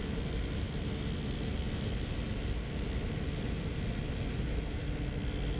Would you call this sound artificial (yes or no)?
no